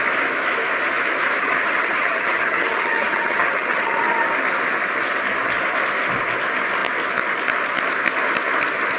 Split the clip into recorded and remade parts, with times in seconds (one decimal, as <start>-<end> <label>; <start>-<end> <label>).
0.0-1.4 recorded; 1.4-4.2 remade; 4.2-9.0 recorded